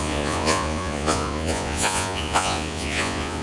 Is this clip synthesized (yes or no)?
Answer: yes